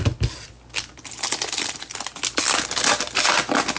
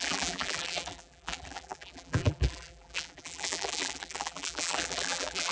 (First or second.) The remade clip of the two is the second